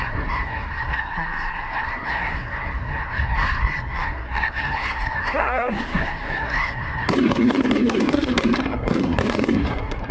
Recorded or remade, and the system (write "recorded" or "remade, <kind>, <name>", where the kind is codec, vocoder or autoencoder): remade, codec, SNAC